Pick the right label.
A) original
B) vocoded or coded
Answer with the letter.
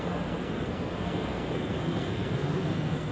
B